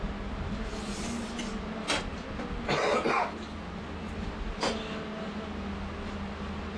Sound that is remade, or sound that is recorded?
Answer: recorded